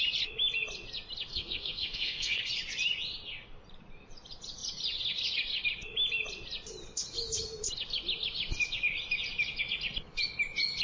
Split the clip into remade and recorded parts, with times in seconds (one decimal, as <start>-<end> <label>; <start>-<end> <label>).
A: 0.0-1.3 recorded; 1.3-2.4 remade; 2.4-10.8 recorded